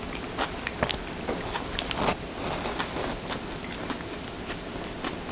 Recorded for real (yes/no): yes